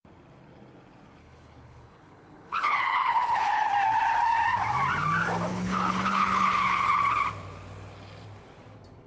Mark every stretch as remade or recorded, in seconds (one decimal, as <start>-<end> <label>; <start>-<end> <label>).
0.0-1.2 recorded; 1.2-3.7 remade; 3.7-5.5 recorded; 5.5-7.0 remade; 7.0-9.1 recorded